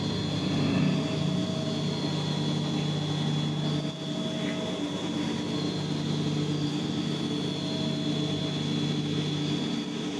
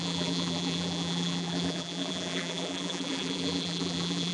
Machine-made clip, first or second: second